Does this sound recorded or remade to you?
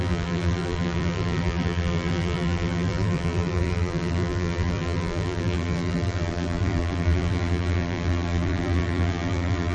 remade